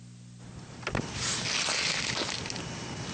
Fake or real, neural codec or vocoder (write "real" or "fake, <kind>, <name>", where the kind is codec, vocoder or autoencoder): real